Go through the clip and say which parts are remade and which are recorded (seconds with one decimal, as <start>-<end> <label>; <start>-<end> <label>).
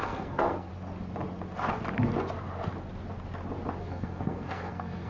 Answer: 0.0-0.7 remade; 0.7-3.8 recorded; 3.8-5.1 remade